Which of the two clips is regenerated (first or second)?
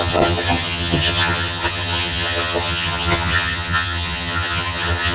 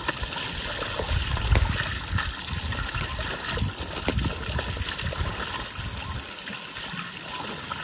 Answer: first